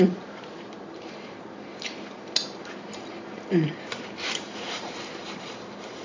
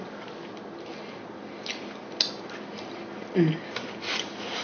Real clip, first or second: second